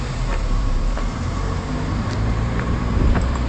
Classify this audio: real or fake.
fake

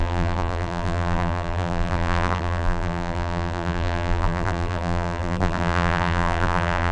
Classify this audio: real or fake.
fake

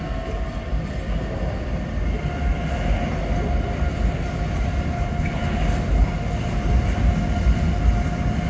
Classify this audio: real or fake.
real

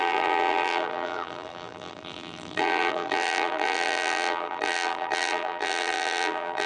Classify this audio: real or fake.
fake